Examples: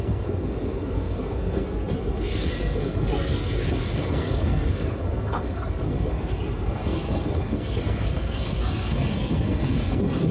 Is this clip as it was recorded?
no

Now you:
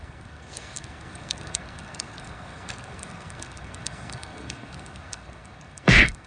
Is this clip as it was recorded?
no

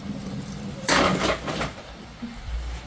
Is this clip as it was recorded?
yes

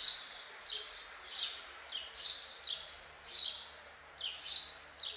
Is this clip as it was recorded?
yes